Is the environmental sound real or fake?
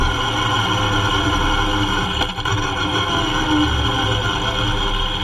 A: real